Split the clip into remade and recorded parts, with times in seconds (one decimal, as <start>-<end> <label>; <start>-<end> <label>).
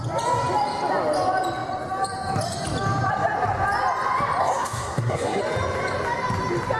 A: 0.0-4.4 recorded; 4.4-5.4 remade; 5.4-6.8 recorded